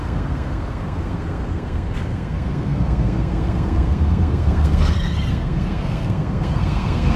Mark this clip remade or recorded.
remade